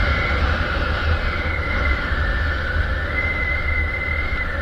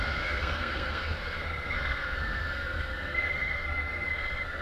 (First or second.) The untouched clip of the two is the first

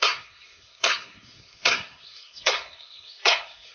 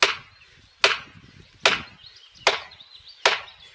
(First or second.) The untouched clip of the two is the second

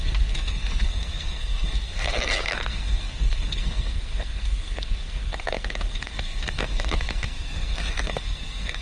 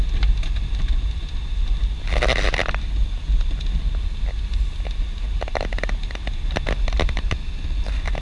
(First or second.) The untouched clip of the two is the second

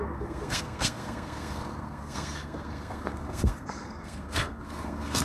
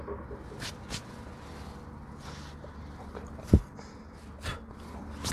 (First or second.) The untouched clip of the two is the second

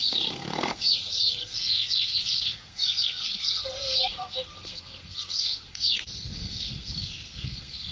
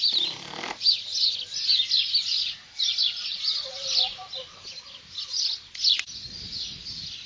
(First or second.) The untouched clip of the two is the second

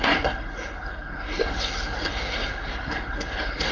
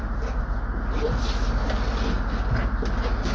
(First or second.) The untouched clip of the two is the second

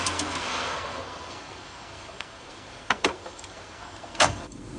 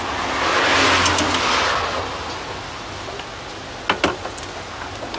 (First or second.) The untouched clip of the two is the second